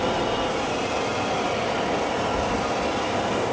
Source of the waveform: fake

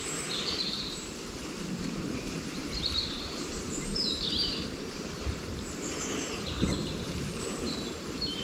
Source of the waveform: fake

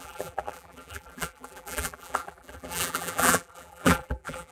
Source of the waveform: fake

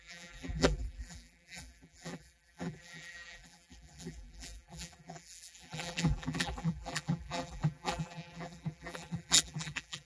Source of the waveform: fake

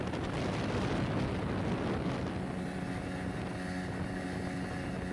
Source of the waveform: real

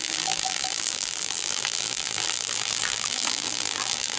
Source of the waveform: fake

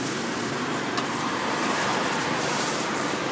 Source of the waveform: fake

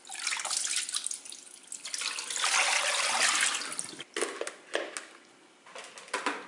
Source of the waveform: real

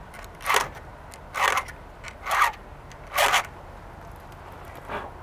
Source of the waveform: real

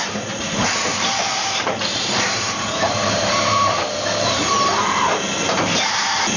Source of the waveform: fake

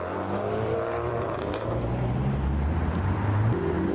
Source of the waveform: fake